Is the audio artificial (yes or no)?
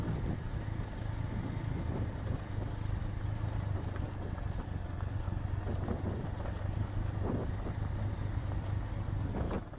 no